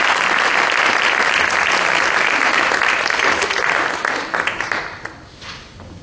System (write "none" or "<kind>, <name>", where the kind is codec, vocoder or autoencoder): none